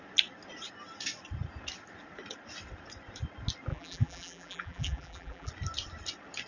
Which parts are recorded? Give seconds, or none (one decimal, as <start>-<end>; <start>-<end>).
0.0-3.7; 5.5-6.5